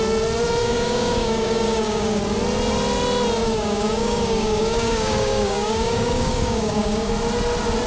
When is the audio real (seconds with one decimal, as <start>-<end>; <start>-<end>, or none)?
0.0-0.6; 2.2-3.4; 7.1-7.9